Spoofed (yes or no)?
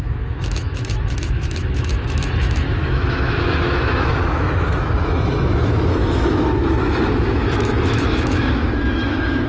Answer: yes